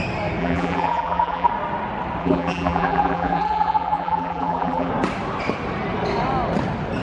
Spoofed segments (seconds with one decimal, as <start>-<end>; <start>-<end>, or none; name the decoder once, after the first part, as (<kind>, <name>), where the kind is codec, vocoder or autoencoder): 0.4-1.5 (vocoder, BigVGAN v2); 2.2-4.9